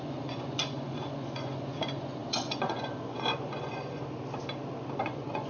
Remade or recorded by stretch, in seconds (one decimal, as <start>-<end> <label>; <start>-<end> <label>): 0.0-4.0 remade; 4.0-5.0 recorded; 5.0-5.5 remade